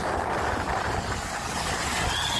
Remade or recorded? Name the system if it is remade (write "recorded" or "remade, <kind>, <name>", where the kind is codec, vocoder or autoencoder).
recorded